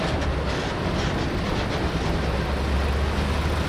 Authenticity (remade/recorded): recorded